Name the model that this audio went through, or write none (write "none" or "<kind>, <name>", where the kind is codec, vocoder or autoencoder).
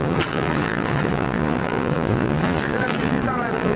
vocoder, Vocos